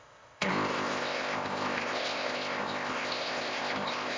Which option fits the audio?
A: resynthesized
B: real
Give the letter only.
A